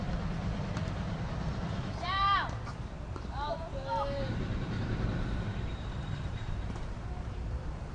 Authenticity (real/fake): fake